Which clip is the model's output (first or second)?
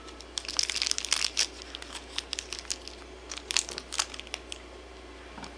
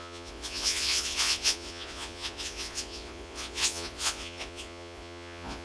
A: second